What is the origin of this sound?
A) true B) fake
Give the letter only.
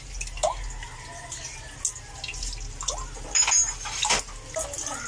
A